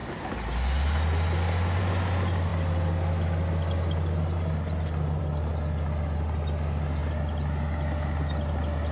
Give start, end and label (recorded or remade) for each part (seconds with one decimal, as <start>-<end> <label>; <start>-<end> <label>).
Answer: 0.0-8.9 recorded